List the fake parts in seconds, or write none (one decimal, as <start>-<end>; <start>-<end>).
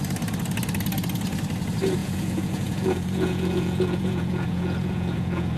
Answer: 2.0-5.6